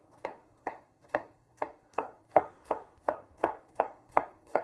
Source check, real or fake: fake